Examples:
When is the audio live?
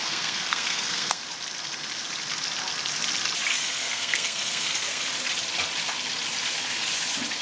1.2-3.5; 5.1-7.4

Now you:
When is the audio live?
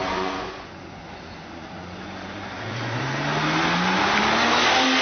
3.0-5.0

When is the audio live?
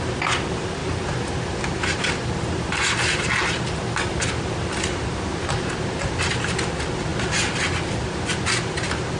0.0-0.8; 2.0-9.2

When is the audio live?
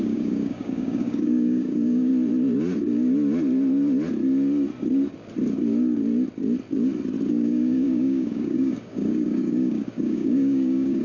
2.1-7.3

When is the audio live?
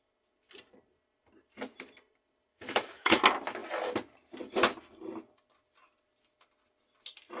0.0-2.5; 3.2-7.4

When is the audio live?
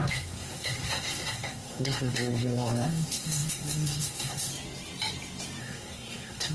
4.5-5.6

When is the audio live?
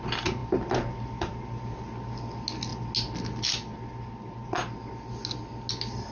0.0-6.1